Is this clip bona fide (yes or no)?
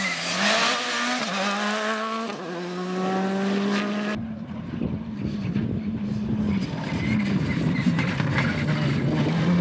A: yes